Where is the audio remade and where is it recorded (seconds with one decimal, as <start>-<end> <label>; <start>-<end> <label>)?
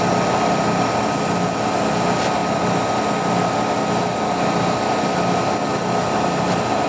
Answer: 0.0-6.9 recorded